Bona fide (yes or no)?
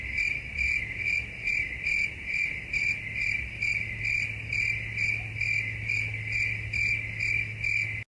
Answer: yes